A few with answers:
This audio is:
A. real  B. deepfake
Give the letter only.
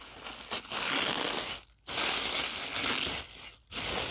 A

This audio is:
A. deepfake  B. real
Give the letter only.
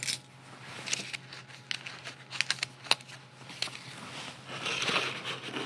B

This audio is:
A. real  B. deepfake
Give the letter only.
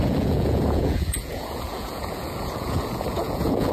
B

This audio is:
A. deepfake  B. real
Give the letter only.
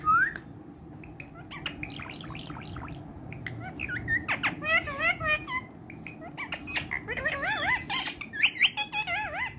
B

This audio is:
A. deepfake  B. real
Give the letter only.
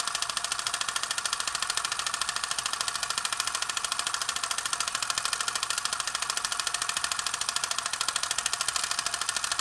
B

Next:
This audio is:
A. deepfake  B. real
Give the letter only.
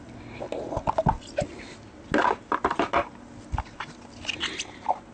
B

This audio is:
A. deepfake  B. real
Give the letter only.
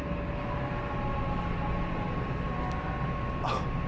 B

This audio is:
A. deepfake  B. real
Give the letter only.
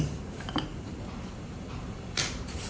A